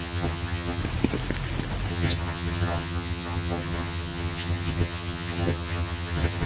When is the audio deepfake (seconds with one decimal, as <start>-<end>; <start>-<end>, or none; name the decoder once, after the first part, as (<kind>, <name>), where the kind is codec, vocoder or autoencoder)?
0.0-0.8 (vocoder, HiFi-GAN); 1.9-6.5